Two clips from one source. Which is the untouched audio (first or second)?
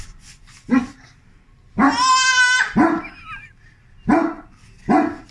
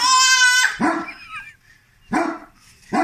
first